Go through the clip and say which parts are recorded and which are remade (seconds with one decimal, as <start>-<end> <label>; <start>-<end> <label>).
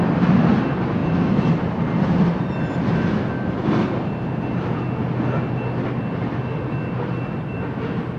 0.0-8.2 recorded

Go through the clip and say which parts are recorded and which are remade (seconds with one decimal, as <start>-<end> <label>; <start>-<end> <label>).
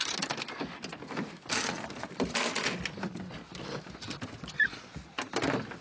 0.0-5.8 recorded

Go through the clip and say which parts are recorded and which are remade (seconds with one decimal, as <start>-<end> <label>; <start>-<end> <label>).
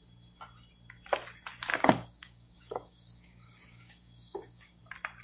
0.0-1.7 recorded; 1.7-4.8 remade; 4.8-5.2 recorded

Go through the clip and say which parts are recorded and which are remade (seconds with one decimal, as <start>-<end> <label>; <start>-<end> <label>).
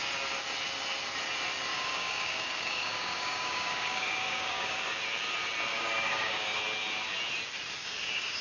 0.0-1.7 recorded; 1.7-4.8 remade; 4.8-5.7 recorded; 5.7-6.6 remade; 6.6-7.8 recorded; 7.8-8.4 remade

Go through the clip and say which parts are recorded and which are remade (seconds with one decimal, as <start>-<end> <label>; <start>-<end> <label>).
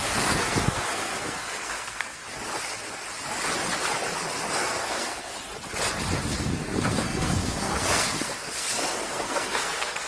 0.0-2.2 remade; 2.2-4.5 recorded; 4.5-5.3 remade; 5.3-6.4 recorded; 6.4-10.1 remade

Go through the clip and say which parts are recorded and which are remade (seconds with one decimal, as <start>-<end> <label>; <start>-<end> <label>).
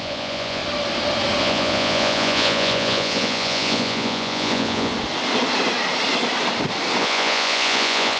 0.0-0.6 remade; 0.6-1.4 recorded; 1.4-4.9 remade; 4.9-7.0 recorded; 7.0-8.2 remade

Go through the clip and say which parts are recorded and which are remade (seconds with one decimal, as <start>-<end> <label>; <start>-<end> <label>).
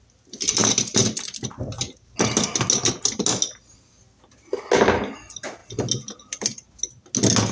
0.0-7.5 recorded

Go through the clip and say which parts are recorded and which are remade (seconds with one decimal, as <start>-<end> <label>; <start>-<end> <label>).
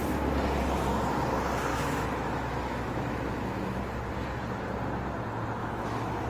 0.0-1.7 recorded; 1.7-3.8 remade; 3.8-5.6 recorded; 5.6-6.3 remade